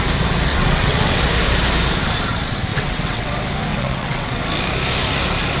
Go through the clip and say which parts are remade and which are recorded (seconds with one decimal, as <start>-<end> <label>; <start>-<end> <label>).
0.0-0.5 recorded; 0.5-1.2 remade; 1.2-2.7 recorded; 2.7-3.3 remade; 3.3-3.7 recorded; 3.7-4.4 remade; 4.4-5.6 recorded